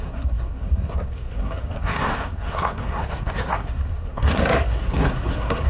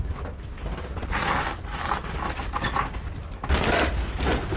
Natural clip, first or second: second